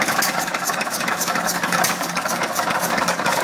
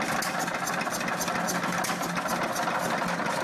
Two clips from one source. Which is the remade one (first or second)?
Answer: first